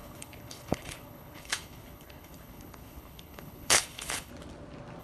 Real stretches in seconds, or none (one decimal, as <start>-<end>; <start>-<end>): 4.3-5.0